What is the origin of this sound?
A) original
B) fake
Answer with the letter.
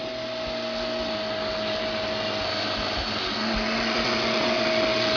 A